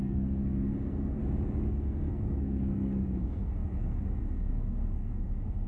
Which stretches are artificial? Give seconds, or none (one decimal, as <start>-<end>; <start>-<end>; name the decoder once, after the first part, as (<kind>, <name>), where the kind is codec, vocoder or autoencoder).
0.0-1.2 (codec, SNAC); 1.7-5.7